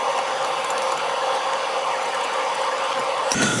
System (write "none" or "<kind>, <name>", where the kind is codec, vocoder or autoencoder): none